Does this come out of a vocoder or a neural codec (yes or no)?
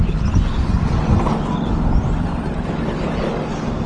no